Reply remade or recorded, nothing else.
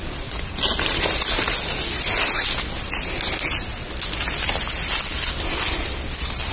recorded